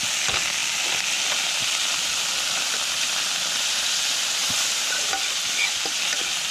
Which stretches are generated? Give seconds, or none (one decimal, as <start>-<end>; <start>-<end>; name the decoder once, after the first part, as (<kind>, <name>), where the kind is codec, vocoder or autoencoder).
4.4-5.1 (vocoder, BigVGAN v2)